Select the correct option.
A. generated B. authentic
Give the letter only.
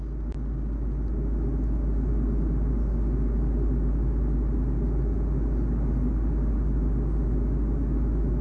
B